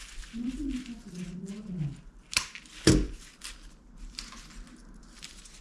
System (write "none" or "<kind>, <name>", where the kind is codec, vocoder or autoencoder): none